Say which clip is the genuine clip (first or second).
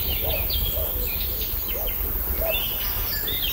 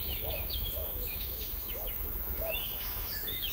first